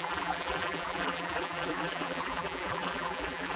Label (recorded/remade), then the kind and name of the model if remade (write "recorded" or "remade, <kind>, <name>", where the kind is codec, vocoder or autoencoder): remade, vocoder, BigVGAN v2